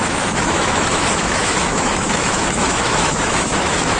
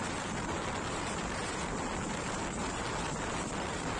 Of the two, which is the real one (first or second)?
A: second